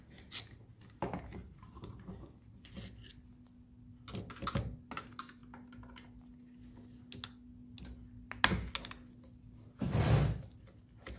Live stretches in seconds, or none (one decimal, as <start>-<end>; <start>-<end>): 0.0-11.2